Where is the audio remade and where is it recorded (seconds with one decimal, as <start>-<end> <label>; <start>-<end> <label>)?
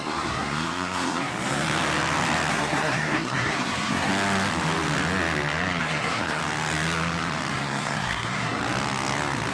0.0-1.3 remade; 1.3-2.5 recorded; 2.5-4.1 remade; 4.1-5.8 recorded; 5.8-6.4 remade; 6.4-7.5 recorded; 7.5-8.6 remade; 8.6-9.5 recorded